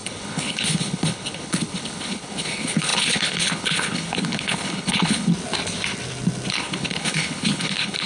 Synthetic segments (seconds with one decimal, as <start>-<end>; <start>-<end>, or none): 0.0-5.3; 6.5-8.1